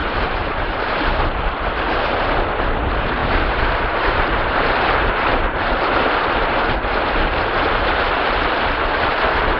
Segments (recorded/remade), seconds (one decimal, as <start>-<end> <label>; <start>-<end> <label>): 0.0-1.4 remade; 1.4-3.2 recorded; 3.2-5.1 remade; 5.1-9.6 recorded